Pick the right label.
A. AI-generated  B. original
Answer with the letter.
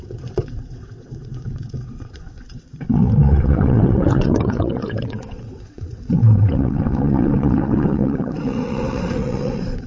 A